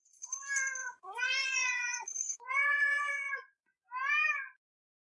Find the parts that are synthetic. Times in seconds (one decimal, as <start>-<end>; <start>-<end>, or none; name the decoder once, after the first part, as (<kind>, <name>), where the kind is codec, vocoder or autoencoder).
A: 0.8-3.8 (vocoder, Vocos)